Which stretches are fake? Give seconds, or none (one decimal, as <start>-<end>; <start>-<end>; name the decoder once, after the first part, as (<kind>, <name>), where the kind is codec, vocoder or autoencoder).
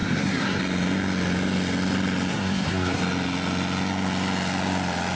0.0-0.6 (codec, SNAC); 2.3-3.0